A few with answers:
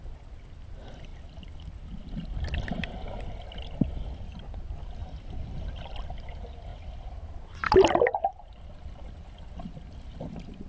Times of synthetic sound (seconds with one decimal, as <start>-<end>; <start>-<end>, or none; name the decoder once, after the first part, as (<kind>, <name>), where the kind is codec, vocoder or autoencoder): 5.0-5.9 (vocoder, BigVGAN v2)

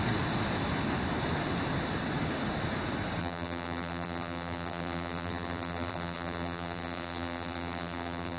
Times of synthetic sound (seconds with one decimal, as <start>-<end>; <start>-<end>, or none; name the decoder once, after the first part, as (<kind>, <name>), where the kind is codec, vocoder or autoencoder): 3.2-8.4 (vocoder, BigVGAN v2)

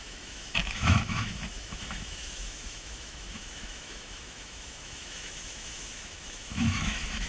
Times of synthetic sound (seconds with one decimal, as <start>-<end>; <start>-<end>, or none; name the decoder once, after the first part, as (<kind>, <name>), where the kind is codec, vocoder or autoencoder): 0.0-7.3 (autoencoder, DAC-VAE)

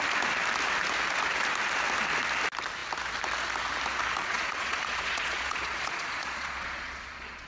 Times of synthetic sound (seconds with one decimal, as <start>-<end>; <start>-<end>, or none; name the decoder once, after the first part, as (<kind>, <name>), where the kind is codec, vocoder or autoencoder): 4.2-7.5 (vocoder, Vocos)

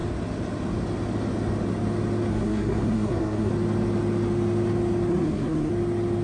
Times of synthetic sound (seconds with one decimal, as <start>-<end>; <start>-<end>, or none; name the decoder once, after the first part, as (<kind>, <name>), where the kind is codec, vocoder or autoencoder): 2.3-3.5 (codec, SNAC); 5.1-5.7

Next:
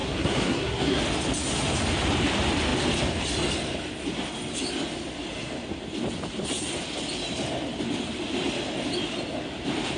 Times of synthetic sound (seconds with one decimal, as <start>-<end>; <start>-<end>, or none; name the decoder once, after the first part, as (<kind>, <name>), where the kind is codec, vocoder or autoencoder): 0.0-1.0 (codec, SNAC)